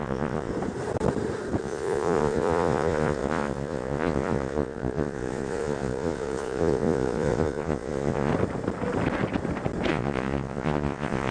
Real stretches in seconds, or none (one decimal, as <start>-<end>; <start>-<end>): 0.5-1.6; 8.3-9.9